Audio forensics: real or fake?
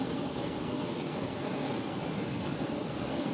fake